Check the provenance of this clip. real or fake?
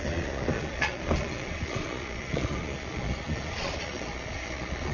fake